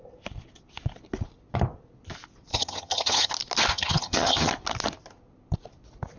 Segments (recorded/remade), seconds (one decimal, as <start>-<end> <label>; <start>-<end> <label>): 0.0-2.5 recorded; 2.5-3.3 remade; 3.3-3.7 recorded; 3.7-4.5 remade; 4.5-6.2 recorded